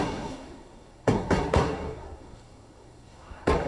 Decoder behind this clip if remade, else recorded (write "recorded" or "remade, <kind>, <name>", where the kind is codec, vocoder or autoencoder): remade, codec, SNAC